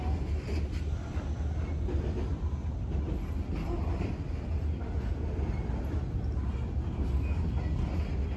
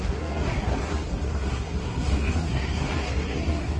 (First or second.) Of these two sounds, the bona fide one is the first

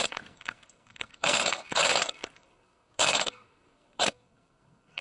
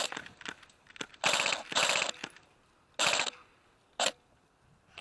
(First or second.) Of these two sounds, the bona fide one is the second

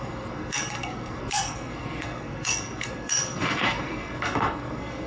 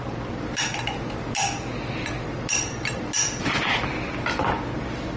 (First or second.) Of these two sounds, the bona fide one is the second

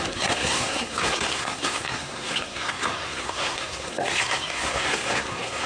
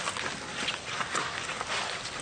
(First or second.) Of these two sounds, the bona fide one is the second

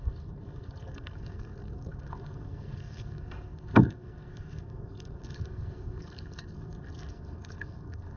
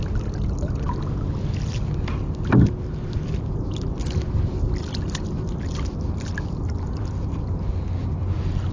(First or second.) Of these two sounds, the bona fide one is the second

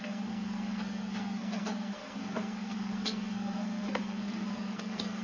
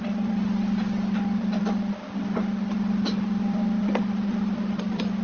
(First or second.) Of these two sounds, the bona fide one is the second